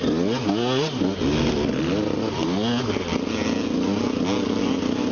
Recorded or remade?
recorded